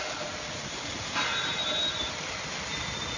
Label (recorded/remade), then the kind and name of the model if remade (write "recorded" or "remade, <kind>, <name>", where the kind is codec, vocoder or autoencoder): recorded